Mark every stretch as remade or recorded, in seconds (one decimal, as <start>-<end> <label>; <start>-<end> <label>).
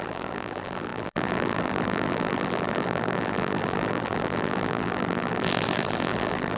0.0-6.6 remade